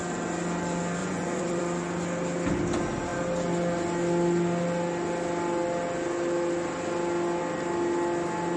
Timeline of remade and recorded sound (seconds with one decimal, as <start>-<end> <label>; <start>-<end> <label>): 0.0-1.0 recorded; 1.0-1.6 remade; 1.6-8.6 recorded